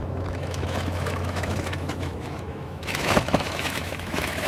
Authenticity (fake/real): fake